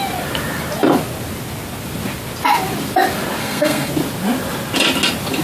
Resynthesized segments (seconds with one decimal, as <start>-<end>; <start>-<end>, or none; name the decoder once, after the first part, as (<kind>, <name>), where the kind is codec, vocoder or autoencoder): 3.4-3.9 (codec, SNAC)